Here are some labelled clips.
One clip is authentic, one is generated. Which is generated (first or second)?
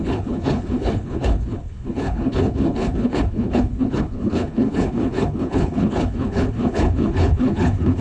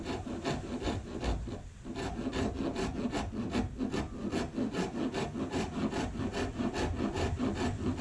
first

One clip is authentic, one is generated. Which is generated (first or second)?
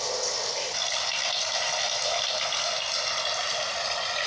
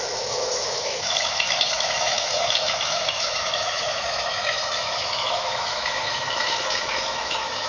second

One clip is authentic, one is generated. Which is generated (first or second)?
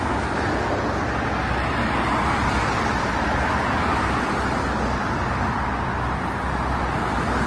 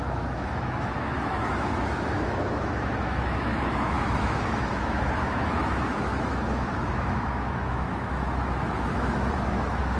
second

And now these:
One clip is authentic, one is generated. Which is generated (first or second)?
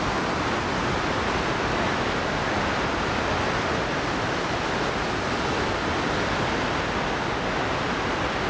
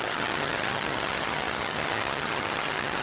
second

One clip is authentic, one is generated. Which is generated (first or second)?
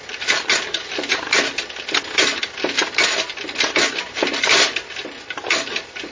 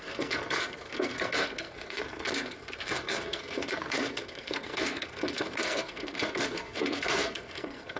second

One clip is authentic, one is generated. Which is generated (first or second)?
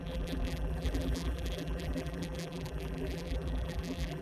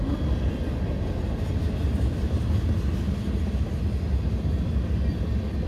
first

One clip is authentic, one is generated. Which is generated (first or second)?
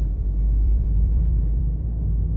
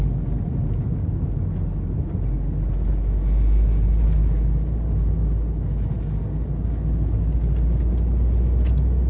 first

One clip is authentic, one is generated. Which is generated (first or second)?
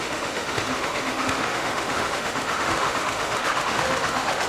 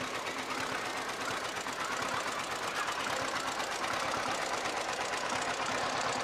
first